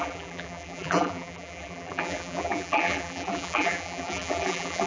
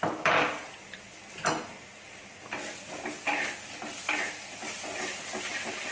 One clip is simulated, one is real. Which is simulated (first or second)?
first